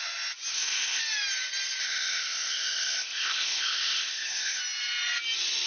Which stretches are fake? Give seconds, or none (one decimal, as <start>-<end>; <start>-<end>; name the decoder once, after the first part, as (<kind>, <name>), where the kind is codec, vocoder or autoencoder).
0.5-1.0 (codec, ZipCodec); 1.8-4.6